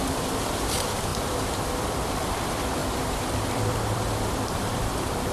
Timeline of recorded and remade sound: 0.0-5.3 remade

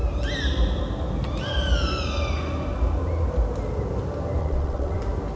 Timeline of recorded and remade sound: 0.0-4.4 recorded; 4.4-5.0 remade; 5.0-5.4 recorded